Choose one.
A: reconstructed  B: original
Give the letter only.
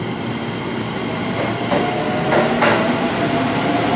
B